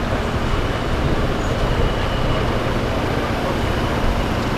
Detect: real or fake real